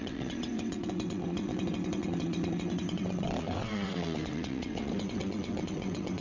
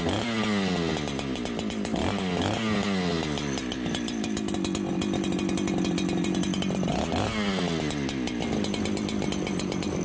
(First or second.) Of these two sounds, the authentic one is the second